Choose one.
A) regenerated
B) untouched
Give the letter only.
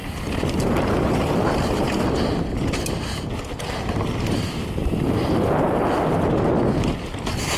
B